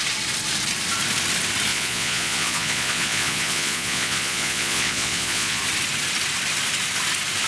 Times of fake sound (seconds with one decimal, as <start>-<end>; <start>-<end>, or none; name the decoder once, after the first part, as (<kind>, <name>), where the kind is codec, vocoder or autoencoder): 1.7-5.6 (vocoder, Vocos)